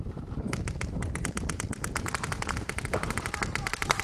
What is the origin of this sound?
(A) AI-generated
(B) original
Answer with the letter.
A